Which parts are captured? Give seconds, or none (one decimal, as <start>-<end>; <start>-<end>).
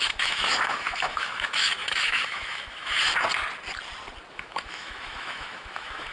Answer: 3.1-4.3